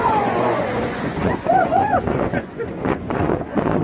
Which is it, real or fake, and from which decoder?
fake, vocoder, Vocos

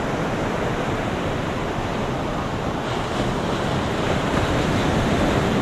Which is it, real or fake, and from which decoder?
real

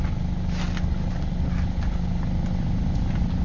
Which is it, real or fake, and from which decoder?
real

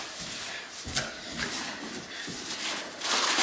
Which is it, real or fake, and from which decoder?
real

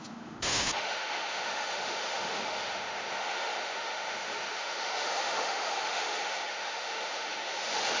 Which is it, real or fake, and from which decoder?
fake, autoencoder, DAC-VAE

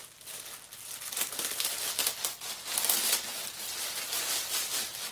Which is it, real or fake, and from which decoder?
real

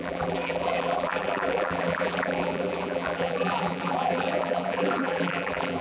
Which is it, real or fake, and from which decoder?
fake, vocoder, BigVGAN v2